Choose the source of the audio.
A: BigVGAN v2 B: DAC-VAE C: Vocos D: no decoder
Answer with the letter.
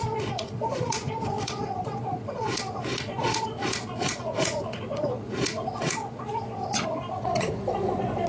C